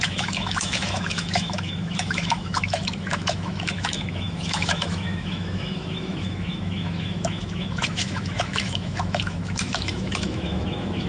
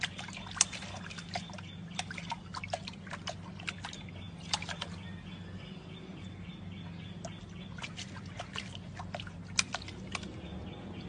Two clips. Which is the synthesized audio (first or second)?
first